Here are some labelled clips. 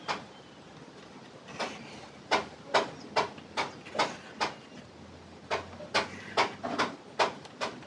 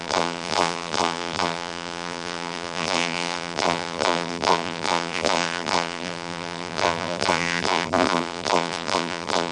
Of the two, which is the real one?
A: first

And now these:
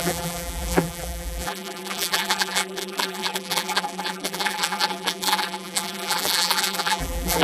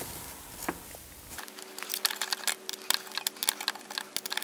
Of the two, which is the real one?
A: second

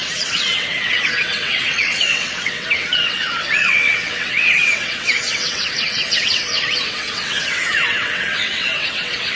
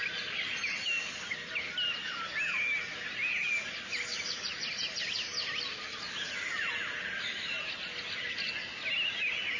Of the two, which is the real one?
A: second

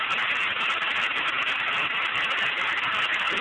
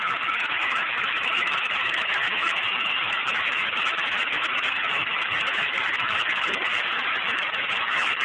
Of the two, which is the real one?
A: first